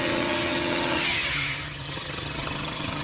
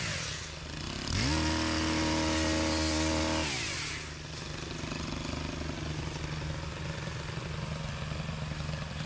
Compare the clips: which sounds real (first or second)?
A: second